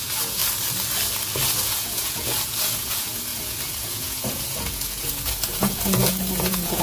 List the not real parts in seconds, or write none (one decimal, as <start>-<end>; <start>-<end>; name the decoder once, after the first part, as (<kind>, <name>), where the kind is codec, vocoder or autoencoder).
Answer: 0.0-0.4 (vocoder, Vocos); 1.5-6.8